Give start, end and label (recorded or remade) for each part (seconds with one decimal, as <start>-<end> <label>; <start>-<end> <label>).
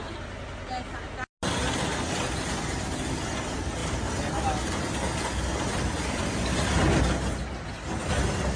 0.0-8.6 recorded